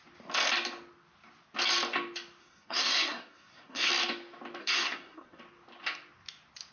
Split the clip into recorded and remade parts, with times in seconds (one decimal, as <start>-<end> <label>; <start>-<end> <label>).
0.0-2.4 recorded; 2.4-3.9 remade; 3.9-4.6 recorded; 4.6-5.4 remade; 5.4-6.7 recorded